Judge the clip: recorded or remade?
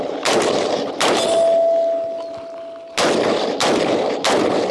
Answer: recorded